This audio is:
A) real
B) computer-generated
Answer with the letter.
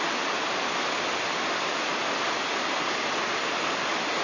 A